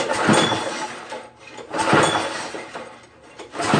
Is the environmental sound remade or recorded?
recorded